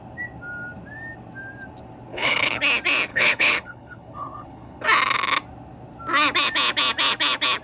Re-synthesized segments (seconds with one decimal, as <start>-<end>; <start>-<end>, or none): 2.1-2.6; 3.1-4.8